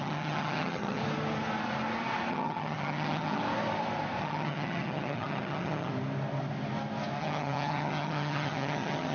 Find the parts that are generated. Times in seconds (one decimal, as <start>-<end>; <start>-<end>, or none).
0.0-1.0; 2.3-3.4; 4.2-5.9; 7.2-9.1